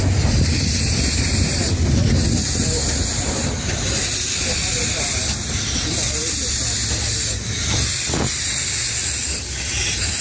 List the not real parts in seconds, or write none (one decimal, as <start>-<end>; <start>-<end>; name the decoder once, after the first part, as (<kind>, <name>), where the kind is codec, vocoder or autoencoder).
none